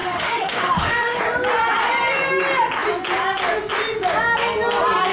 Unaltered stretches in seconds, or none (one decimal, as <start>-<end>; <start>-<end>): 1.2-5.1